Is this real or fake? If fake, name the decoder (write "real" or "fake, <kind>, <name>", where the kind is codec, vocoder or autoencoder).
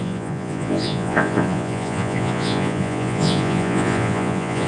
fake, vocoder, Vocos